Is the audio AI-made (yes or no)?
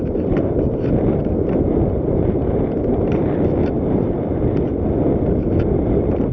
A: no